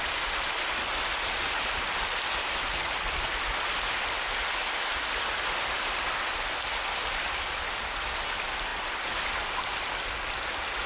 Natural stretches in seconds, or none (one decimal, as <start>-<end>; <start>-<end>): 0.0-10.9